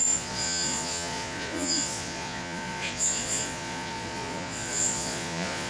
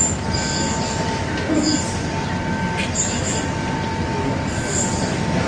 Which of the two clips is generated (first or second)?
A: first